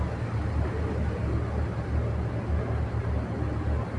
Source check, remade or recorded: recorded